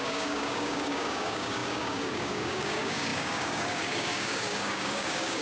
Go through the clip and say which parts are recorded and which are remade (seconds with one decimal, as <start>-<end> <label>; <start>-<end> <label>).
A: 0.0-5.4 remade